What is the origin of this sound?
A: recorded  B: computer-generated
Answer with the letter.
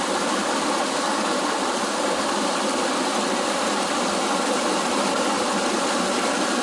A